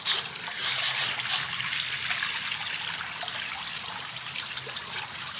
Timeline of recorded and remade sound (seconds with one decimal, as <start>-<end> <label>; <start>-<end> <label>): 0.0-0.6 remade; 0.6-3.7 recorded; 3.7-5.4 remade